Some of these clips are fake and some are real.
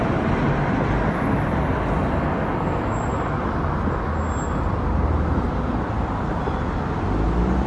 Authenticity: real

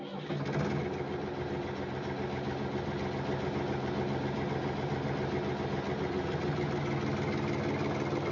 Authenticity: real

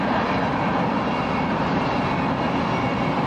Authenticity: real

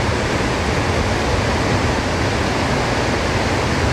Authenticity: real